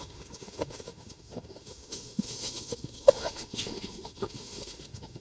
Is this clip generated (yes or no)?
yes